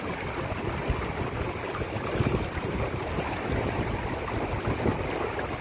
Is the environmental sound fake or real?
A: real